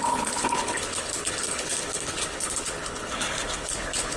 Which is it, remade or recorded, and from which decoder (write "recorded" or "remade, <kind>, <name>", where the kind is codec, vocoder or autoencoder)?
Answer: remade, codec, HILCodec